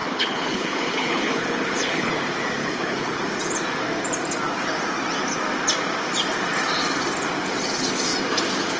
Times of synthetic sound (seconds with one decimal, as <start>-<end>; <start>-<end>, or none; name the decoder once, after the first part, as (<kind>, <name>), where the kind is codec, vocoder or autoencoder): 0.0-2.1 (codec, HILCodec); 2.6-3.2